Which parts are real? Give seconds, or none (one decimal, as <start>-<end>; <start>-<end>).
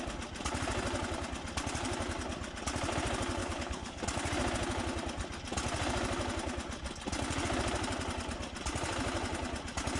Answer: 0.0-3.4; 4.0-10.0